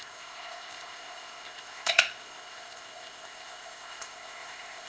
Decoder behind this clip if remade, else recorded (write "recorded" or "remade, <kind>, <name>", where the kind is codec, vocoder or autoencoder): remade, codec, ZipCodec